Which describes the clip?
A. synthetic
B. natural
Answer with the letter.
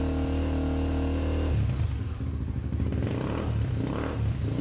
B